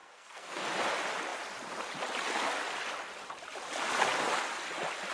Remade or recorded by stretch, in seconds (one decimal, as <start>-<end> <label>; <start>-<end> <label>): 0.0-0.6 remade; 0.6-5.1 recorded